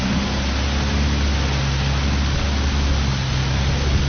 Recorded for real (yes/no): yes